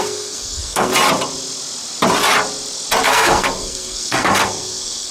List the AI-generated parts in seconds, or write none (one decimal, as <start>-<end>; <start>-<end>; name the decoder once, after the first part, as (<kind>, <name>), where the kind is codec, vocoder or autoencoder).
0.0-0.9 (codec, SNAC); 3.0-5.1